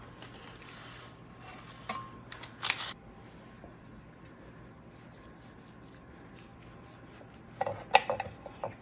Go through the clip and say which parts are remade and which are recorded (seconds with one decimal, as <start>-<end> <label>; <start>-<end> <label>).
0.0-8.8 recorded